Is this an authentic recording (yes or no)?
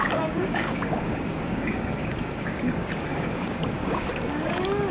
no